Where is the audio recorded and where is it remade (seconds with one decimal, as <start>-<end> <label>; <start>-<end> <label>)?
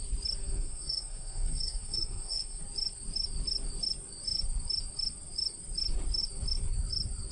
0.0-0.4 recorded; 0.4-2.6 remade; 2.6-7.3 recorded